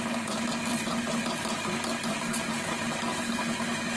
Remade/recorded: recorded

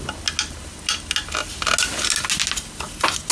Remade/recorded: recorded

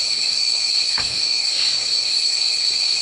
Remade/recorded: remade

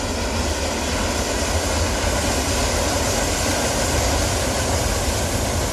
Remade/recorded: recorded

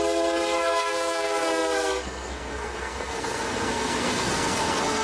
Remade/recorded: remade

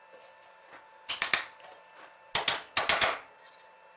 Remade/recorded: recorded